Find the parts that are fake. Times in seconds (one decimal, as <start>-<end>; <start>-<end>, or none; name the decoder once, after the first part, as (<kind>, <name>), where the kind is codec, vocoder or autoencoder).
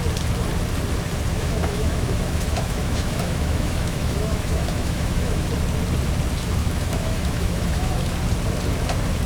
1.3-5.5 (autoencoder, DAC-VAE); 6.6-8.1